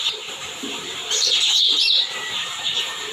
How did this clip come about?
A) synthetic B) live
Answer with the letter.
A